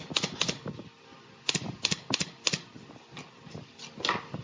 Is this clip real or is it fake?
real